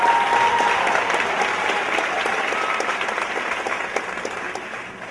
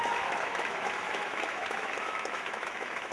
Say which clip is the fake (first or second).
second